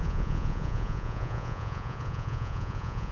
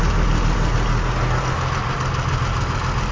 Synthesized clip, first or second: first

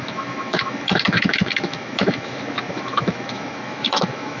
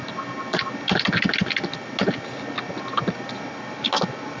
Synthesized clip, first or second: first